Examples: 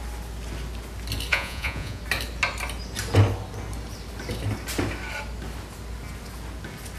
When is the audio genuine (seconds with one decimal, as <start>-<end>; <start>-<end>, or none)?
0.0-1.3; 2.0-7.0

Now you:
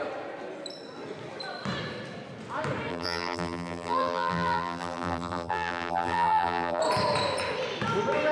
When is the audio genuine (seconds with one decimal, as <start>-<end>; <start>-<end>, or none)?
0.0-2.9; 6.8-8.3

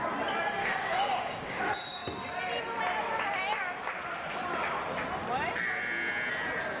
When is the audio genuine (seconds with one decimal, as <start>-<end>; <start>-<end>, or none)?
0.0-0.6; 1.6-6.8